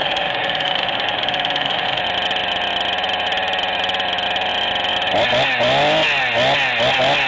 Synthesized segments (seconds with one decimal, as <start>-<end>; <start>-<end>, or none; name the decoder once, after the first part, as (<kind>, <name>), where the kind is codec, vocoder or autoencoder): 0.0-2.0 (autoencoder, DAC-VAE)